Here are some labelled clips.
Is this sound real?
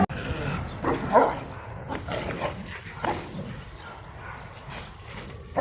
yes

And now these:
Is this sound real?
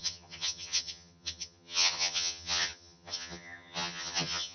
no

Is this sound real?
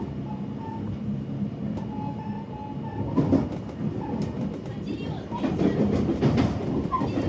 yes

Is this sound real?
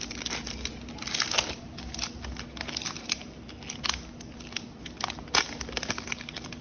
yes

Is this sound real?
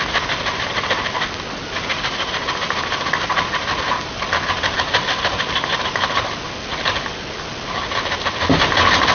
yes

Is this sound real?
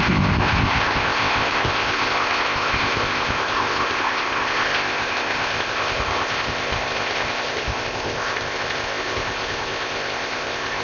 no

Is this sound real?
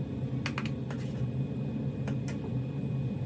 yes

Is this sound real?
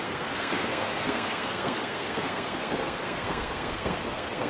no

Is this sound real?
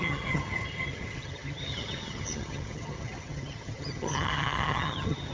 no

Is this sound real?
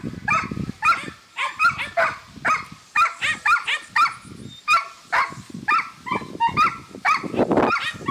yes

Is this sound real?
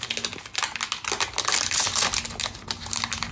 yes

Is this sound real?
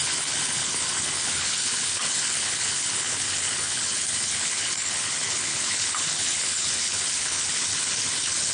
no